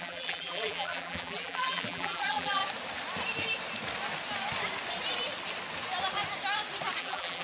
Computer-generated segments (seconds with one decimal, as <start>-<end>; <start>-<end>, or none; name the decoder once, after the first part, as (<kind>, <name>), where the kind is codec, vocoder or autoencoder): 0.0-2.6 (vocoder, BigVGAN v2); 7.0-7.4

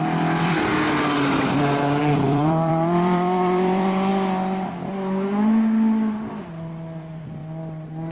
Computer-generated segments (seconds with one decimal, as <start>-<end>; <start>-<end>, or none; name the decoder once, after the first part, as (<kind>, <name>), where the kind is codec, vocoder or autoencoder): 0.0-0.7 (vocoder, BigVGAN v2); 2.0-4.1; 6.3-7.4

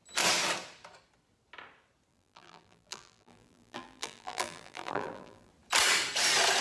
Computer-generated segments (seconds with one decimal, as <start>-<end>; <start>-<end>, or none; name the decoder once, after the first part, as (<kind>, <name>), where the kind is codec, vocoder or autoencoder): 2.1-5.5 (vocoder, BigVGAN v2)

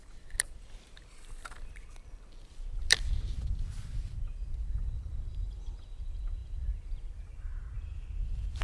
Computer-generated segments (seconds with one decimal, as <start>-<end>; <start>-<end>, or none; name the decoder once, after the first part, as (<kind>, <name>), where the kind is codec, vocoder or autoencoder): 0.0-7.5 (vocoder, BigVGAN v2)

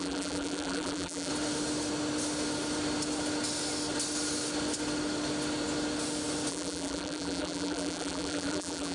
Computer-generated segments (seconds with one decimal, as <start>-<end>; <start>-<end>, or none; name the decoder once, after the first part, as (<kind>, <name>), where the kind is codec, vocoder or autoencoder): 0.0-1.3 (vocoder, BigVGAN v2); 6.5-8.9

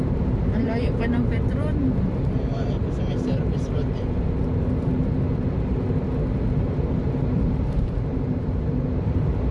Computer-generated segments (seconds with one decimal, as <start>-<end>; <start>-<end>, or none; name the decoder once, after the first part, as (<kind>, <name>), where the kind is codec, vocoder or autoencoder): 0.0-4.9 (vocoder, BigVGAN v2); 6.6-9.5